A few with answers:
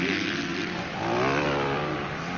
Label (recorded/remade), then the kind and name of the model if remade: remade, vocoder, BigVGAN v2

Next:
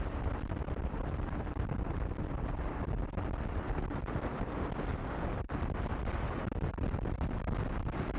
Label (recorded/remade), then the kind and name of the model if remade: recorded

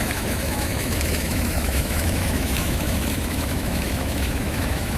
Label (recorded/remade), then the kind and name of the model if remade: remade, autoencoder, DAC-VAE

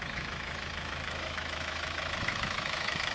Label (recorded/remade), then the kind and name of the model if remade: remade, autoencoder, DAC-VAE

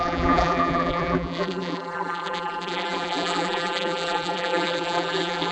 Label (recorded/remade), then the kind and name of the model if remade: remade, vocoder, BigVGAN v2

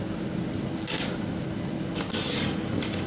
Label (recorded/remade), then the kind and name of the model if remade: recorded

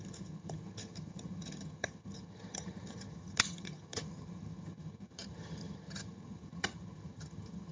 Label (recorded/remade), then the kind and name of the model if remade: remade, vocoder, HiFi-GAN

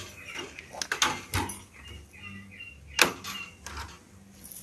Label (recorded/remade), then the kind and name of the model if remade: recorded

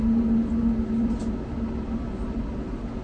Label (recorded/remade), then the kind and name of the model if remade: recorded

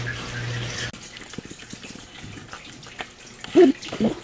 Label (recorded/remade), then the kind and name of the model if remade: recorded